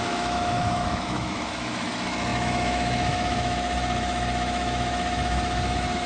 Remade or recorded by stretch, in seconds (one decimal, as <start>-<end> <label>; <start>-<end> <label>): 0.0-6.1 remade